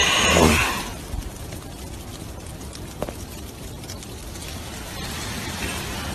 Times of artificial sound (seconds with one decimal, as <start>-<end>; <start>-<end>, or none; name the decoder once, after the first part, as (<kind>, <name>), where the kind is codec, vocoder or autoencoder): 0.0-6.1 (vocoder, BigVGAN v2)